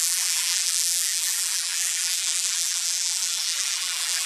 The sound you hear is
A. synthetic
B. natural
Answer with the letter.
A